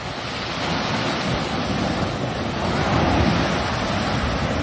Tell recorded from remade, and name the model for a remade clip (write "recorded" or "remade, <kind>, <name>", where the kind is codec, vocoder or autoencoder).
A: recorded